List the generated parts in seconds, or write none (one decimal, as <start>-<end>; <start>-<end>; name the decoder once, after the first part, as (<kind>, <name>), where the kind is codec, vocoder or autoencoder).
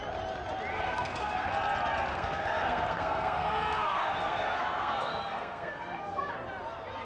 0.7-1.5 (codec, SNAC); 2.1-6.3